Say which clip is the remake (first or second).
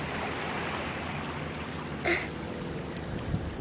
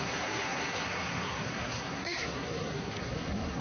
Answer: second